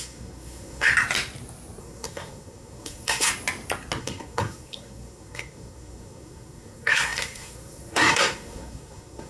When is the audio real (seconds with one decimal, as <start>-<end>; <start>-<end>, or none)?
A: 0.9-1.8; 3.3-4.0